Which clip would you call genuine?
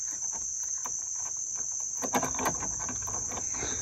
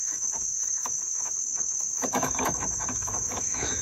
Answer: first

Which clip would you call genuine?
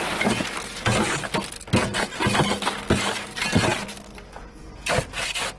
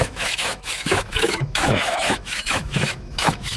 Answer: first